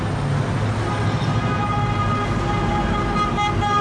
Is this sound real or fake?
real